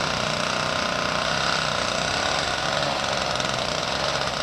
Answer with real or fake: real